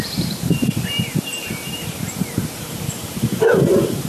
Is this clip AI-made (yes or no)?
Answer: yes